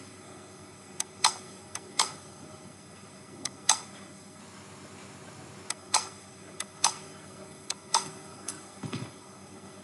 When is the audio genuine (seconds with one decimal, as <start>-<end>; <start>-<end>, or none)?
4.4-5.7